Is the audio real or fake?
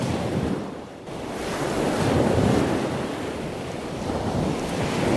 real